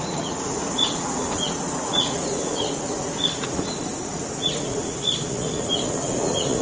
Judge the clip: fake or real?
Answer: fake